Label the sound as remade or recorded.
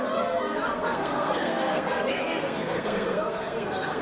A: remade